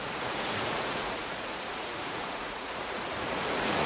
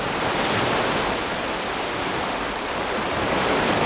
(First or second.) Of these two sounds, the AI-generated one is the first